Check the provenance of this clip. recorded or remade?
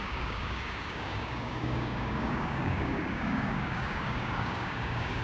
remade